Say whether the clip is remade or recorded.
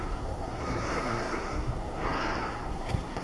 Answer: remade